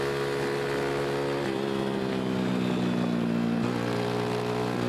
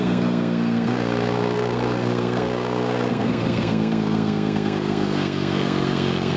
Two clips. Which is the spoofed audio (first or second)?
second